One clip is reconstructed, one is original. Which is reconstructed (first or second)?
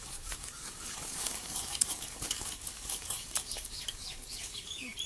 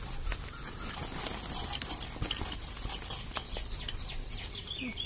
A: first